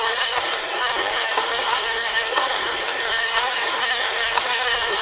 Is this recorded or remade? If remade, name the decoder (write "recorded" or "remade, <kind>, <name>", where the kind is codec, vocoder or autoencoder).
remade, codec, SNAC